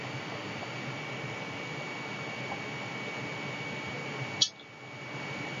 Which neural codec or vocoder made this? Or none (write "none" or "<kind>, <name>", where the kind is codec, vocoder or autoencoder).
none